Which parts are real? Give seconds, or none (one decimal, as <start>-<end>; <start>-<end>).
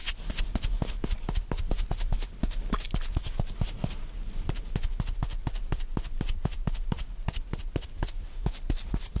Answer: 0.0-9.2